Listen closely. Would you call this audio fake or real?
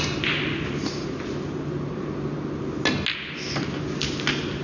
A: real